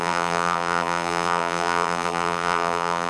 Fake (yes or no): yes